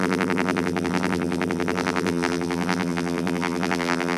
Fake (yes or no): yes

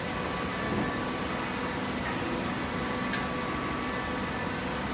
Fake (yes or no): no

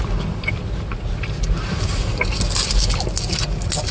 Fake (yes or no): no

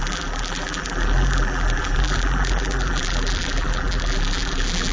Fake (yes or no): yes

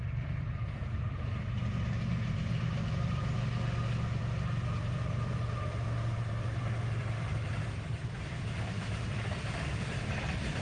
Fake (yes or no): yes